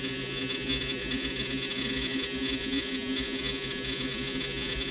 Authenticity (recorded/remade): remade